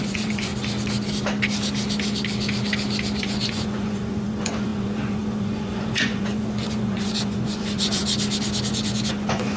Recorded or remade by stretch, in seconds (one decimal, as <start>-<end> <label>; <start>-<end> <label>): 0.0-0.5 remade; 0.5-3.2 recorded; 3.2-8.0 remade; 8.0-8.7 recorded; 8.7-9.6 remade